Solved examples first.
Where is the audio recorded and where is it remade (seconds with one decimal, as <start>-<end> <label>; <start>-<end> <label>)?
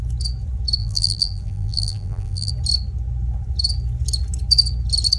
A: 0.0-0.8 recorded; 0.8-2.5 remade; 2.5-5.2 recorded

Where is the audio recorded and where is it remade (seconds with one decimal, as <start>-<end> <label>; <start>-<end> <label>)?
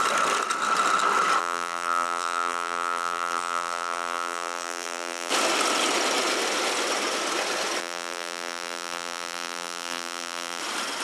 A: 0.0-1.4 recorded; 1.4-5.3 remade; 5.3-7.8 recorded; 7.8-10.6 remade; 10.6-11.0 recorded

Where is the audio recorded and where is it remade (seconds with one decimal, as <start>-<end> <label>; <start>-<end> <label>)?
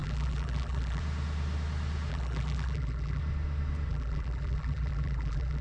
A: 0.0-1.0 remade; 1.0-2.1 recorded; 2.1-3.2 remade; 3.2-3.9 recorded; 3.9-5.6 remade